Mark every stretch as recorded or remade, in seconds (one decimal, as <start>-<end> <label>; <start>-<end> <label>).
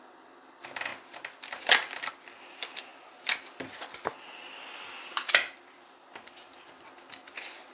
0.0-7.7 recorded